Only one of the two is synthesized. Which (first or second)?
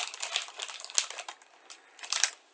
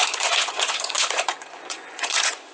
second